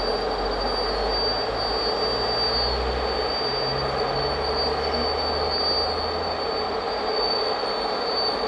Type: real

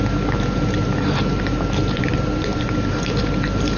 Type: fake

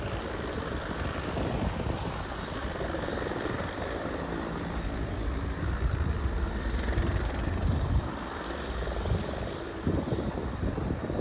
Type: fake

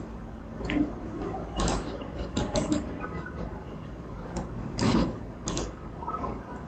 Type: fake